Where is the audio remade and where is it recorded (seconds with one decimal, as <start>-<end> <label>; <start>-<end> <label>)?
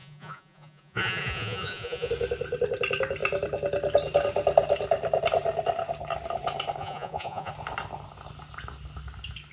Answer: 0.0-2.1 remade; 2.1-6.8 recorded; 6.8-7.5 remade; 7.5-9.5 recorded